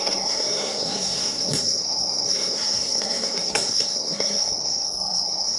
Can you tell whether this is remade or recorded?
remade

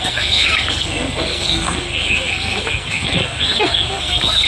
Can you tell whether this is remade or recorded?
remade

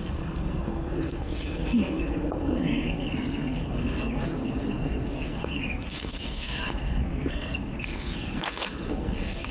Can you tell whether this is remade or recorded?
remade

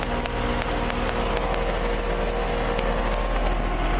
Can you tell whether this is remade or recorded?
recorded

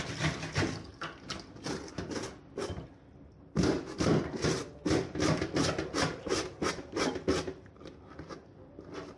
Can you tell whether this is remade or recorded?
recorded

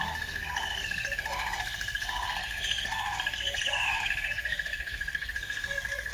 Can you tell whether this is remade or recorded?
remade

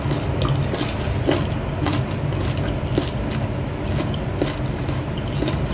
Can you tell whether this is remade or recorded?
recorded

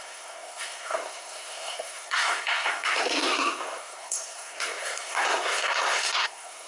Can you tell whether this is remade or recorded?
remade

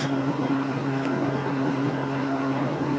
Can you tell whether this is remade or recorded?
remade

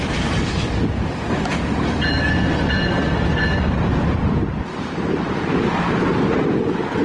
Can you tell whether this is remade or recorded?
recorded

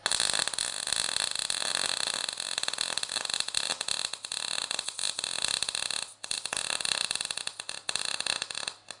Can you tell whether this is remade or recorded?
recorded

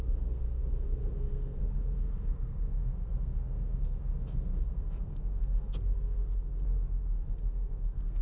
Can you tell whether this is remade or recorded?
remade